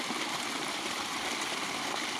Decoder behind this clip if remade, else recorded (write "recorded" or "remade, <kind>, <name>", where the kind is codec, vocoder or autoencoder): recorded